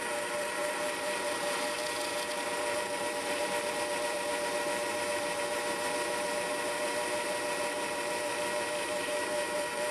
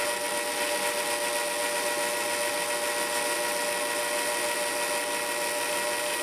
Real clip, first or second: second